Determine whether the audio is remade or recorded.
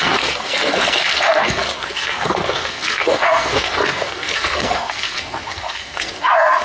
remade